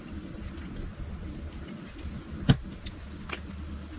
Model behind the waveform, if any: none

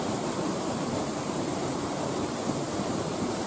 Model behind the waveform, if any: vocoder, BigVGAN v2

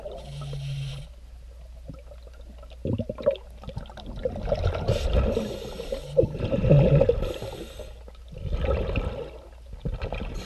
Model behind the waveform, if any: none